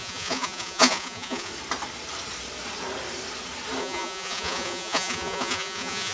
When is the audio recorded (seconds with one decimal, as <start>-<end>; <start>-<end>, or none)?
1.5-3.8